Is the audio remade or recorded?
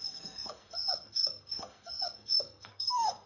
remade